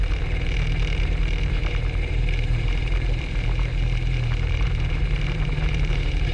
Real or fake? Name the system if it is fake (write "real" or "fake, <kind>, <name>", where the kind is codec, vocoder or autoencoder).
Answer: fake, vocoder, BigVGAN v2